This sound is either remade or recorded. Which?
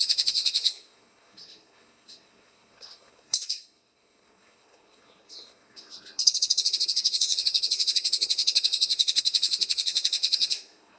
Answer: remade